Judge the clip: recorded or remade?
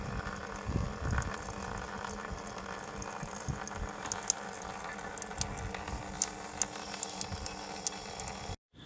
recorded